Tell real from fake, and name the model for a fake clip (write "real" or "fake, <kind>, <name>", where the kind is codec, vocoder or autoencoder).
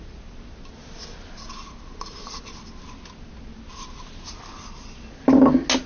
real